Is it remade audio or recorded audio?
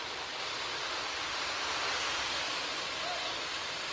remade